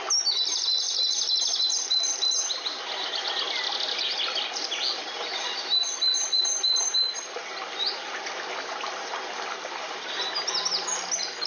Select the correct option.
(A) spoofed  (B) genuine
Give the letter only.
B